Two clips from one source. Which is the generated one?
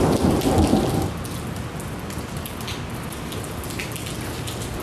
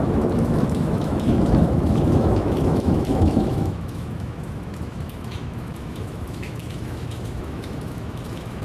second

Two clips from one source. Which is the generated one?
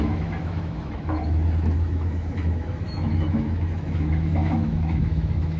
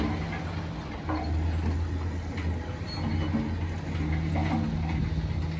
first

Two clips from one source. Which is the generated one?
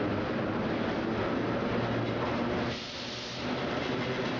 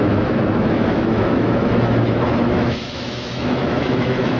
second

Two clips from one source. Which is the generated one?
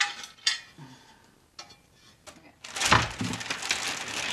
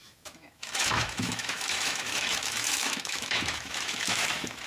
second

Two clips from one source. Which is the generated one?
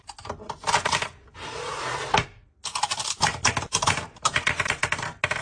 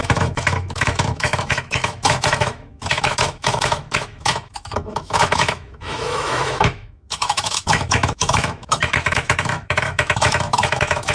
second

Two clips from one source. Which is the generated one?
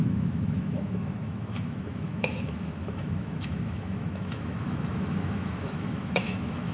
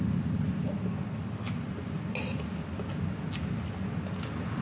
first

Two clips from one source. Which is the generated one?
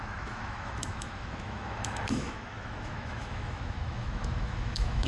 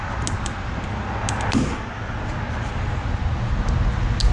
first